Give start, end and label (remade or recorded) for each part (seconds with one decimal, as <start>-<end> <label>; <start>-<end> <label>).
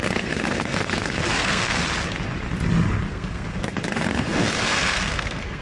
0.0-1.8 remade; 1.8-3.1 recorded; 3.1-5.6 remade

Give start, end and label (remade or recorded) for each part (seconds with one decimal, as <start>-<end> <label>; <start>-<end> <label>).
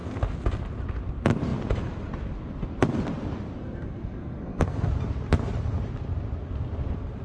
0.0-3.6 recorded; 3.6-4.9 remade; 4.9-7.2 recorded